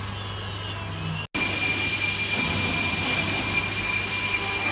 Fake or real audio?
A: real